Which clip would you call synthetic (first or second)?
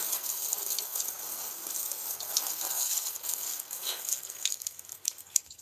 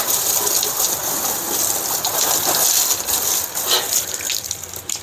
first